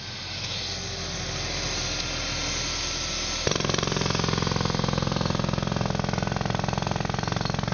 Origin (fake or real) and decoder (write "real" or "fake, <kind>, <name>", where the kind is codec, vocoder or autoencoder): real